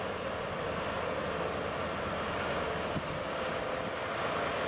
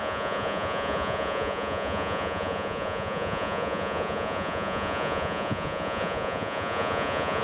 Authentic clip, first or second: first